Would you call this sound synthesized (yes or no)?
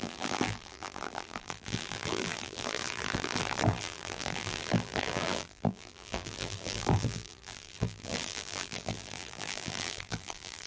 yes